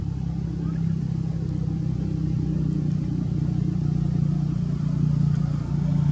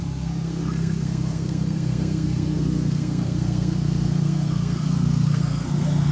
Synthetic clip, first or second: second